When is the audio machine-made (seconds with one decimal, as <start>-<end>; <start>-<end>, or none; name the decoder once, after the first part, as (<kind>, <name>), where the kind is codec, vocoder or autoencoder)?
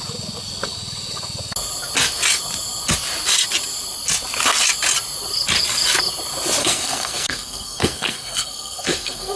6.6-9.4 (codec, SNAC)